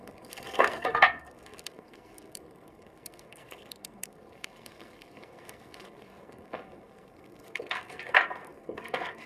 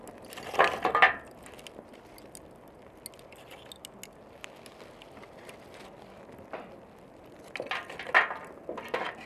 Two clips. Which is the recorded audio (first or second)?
second